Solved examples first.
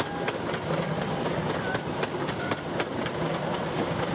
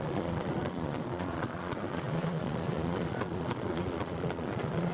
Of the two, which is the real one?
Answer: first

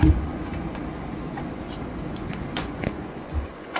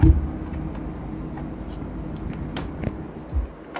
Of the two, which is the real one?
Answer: second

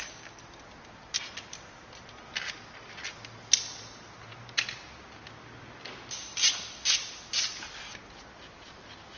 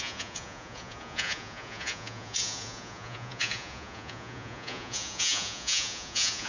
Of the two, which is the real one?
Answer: first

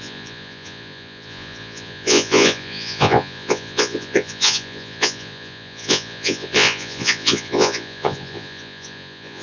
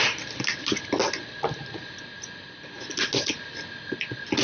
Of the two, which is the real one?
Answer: second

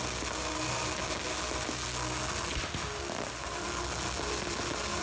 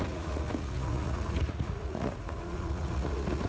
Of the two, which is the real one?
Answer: first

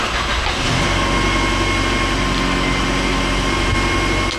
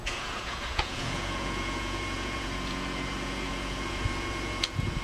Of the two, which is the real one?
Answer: first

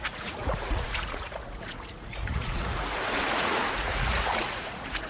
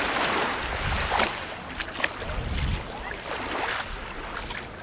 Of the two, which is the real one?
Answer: second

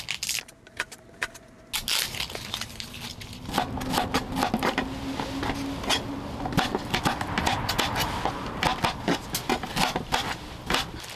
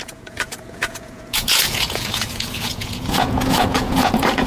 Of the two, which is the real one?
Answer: first